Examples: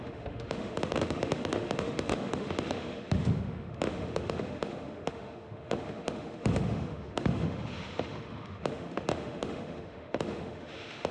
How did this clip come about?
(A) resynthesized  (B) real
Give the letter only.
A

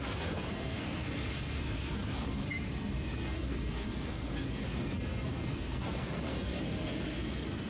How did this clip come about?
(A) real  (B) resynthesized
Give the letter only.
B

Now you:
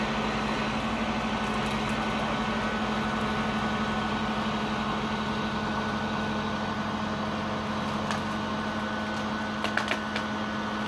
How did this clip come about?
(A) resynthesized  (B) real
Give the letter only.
B